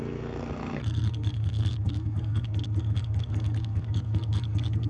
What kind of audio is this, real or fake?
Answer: fake